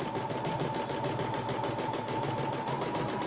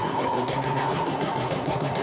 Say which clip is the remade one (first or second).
second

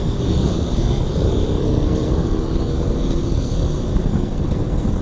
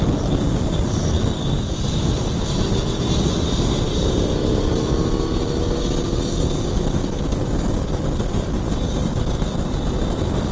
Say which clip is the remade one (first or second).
first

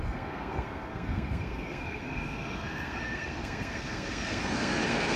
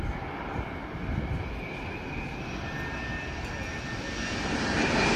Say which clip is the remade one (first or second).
first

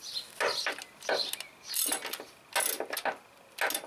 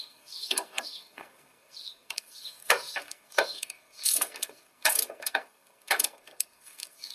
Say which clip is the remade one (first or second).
second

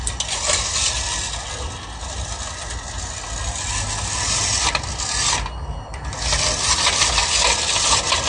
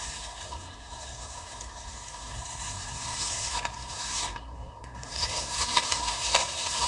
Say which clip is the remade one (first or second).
second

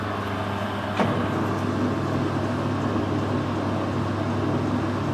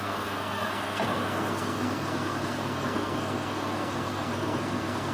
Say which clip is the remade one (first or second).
second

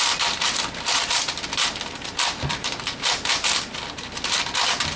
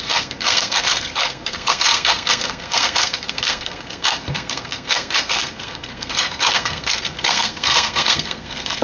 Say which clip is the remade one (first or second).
second